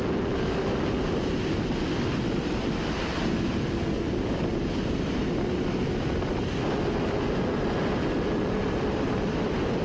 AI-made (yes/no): no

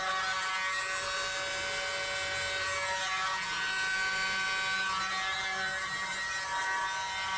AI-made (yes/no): no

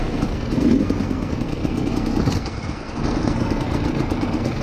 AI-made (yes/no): yes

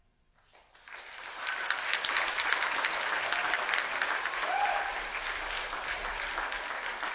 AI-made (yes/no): no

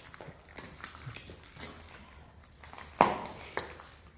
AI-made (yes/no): no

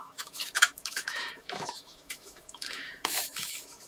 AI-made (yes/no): yes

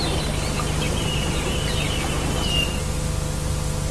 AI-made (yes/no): no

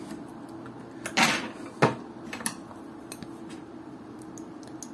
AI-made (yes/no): no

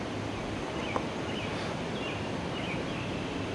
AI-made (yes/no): no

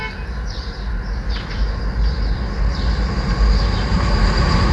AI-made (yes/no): no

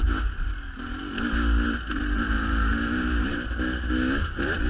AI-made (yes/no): no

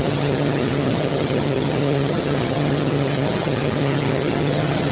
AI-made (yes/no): yes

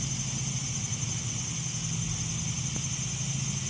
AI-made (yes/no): no